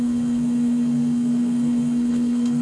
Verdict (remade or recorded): remade